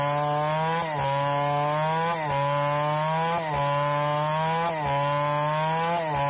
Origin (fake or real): real